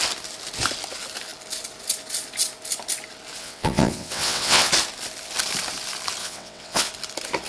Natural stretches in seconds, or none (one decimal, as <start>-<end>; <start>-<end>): 0.0-3.4; 4.7-6.2; 6.9-7.5